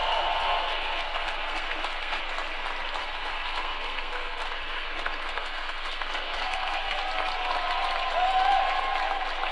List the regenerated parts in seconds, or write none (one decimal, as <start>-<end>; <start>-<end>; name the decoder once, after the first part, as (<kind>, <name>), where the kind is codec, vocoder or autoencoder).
0.0-2.2 (codec, SNAC); 3.0-6.9